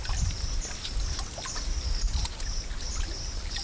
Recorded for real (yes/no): yes